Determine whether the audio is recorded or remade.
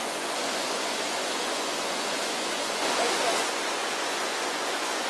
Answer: remade